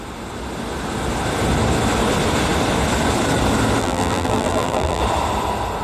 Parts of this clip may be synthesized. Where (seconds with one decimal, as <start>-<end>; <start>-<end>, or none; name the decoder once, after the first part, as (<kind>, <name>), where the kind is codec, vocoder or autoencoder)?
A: 3.8-5.0 (vocoder, BigVGAN v2)